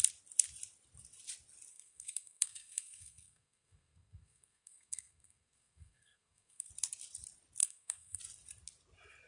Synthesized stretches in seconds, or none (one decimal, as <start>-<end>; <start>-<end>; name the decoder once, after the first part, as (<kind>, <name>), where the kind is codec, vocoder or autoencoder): 1.7-6.7 (codec, SNAC); 7.6-8.2